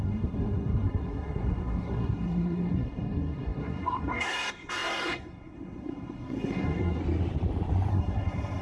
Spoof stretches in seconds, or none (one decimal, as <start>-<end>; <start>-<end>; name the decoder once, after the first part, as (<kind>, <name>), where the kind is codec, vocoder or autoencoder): 0.0-7.0 (codec, SNAC); 7.9-8.6